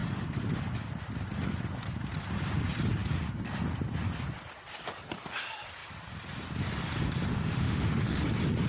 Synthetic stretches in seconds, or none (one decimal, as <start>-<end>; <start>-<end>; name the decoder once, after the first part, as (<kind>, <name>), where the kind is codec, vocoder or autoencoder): 7.3-8.2 (autoencoder, DAC-VAE)